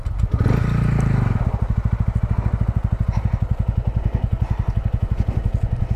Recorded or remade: recorded